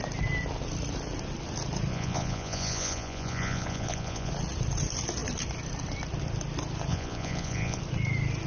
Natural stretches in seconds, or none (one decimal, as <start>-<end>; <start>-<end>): 0.0-1.9; 4.3-6.9; 7.8-8.5